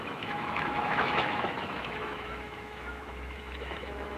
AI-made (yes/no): yes